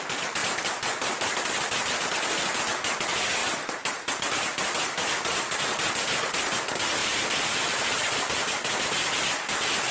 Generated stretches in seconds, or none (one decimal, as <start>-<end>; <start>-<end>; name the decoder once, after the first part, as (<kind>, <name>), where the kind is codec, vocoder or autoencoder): 3.4-5.9 (vocoder, BigVGAN v2); 7.0-8.8